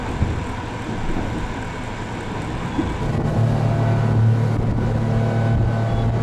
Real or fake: real